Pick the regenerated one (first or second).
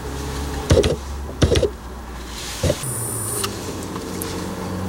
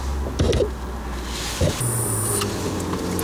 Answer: first